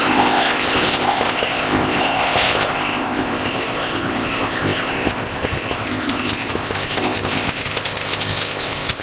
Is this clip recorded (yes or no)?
no